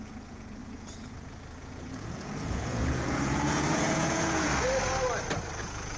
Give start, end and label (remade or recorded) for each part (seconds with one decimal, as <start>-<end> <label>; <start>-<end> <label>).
0.0-4.5 remade; 4.5-5.6 recorded; 5.6-6.0 remade